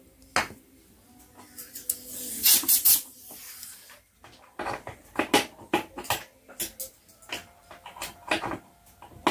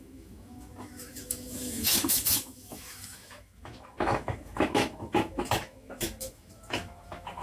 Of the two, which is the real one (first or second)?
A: first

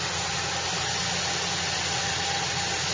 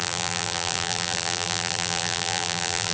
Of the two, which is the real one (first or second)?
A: first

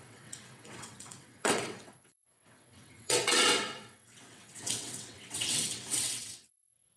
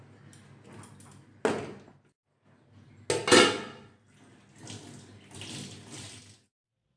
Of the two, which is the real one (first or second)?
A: second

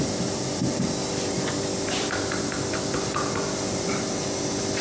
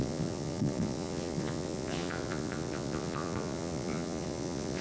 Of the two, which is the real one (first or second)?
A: first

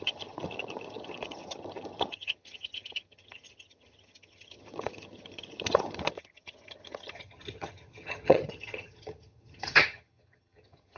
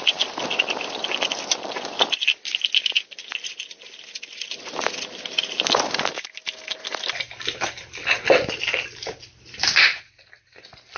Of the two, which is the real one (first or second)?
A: second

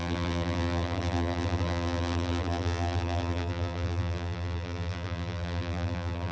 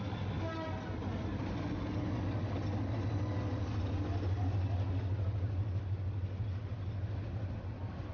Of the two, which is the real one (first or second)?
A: second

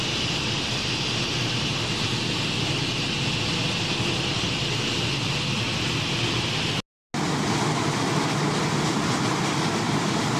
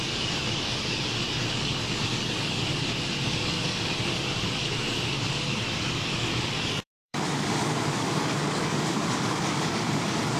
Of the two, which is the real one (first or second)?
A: first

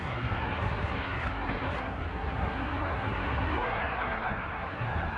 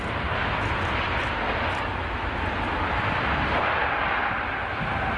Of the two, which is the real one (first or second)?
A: second